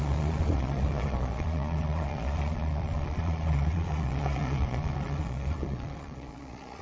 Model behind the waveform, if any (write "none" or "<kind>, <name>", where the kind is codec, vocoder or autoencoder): vocoder, Vocos